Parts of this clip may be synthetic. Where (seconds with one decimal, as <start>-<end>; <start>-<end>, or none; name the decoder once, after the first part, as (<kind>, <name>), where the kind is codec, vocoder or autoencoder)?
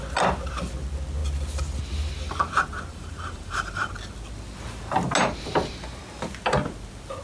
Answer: 2.9-3.9 (vocoder, BigVGAN v2)